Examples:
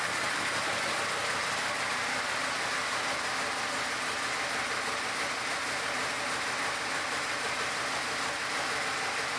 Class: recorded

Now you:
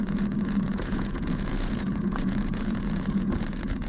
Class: remade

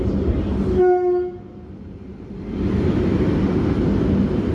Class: recorded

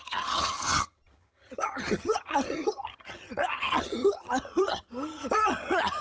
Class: remade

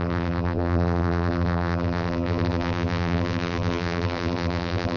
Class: remade